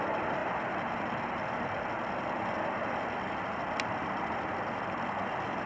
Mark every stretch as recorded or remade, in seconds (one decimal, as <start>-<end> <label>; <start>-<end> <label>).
0.0-5.7 recorded